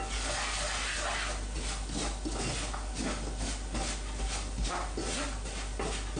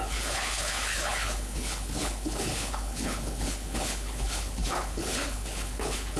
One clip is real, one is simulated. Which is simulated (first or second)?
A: second